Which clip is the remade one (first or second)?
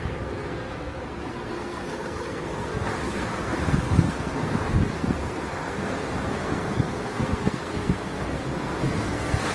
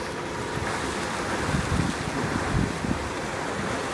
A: first